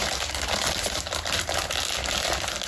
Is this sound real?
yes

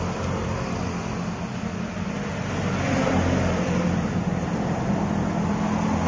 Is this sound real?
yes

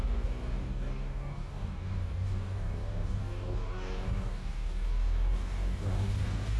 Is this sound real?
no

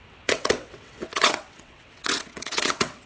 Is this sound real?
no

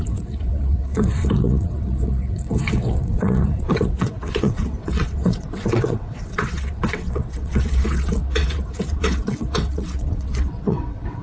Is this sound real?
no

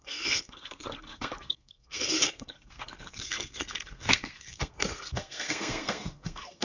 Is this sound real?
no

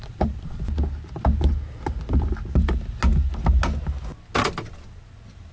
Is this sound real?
yes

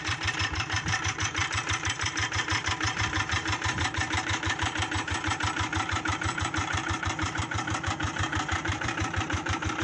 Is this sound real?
no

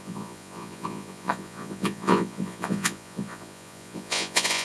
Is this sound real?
no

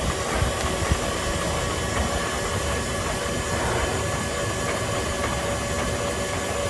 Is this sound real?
yes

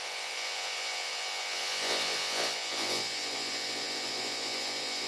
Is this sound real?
no